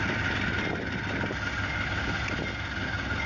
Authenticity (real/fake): real